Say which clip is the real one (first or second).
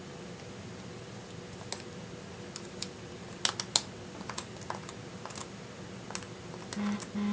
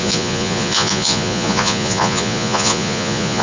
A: first